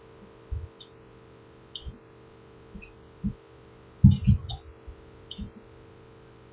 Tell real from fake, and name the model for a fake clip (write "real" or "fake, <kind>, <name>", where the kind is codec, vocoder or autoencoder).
real